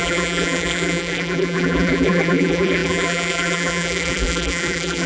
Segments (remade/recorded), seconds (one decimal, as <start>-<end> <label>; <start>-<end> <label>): 0.0-5.1 remade